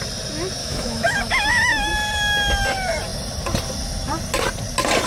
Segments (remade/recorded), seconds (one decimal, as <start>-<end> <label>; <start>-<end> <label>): 0.0-0.6 recorded; 0.6-1.9 remade; 1.9-5.1 recorded